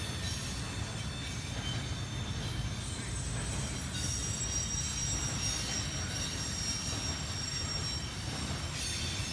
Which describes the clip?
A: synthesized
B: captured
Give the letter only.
B